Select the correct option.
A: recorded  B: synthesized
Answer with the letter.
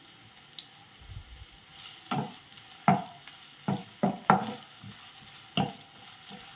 A